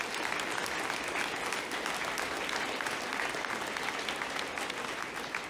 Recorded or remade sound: recorded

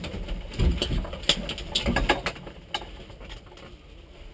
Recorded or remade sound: recorded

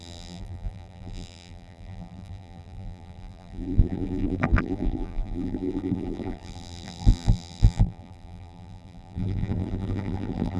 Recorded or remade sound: remade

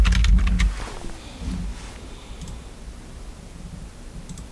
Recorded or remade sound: recorded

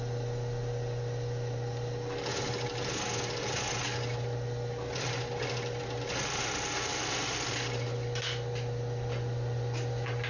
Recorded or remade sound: recorded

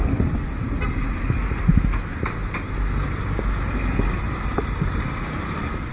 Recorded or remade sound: recorded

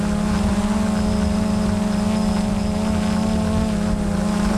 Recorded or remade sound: recorded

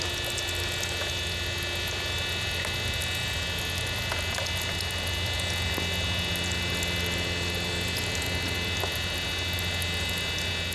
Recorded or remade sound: recorded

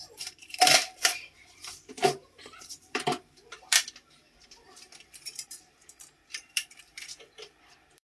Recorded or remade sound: remade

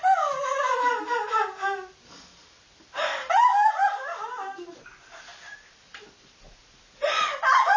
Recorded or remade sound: recorded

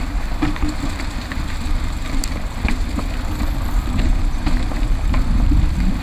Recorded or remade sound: recorded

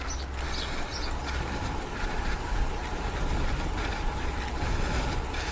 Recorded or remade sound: recorded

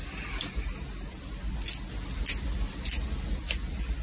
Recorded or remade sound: recorded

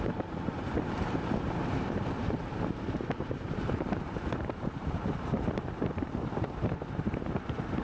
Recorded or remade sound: remade